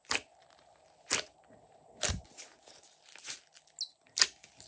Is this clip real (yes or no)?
yes